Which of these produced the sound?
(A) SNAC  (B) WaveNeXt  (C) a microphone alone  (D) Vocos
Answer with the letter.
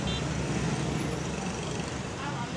C